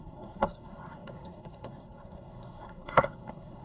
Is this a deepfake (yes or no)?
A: yes